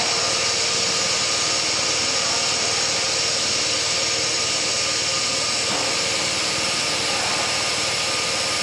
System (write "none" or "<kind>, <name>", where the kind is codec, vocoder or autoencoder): none